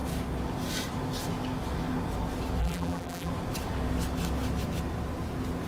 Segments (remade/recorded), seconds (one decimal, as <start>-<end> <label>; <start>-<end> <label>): 0.0-2.6 recorded; 2.6-3.3 remade; 3.3-5.7 recorded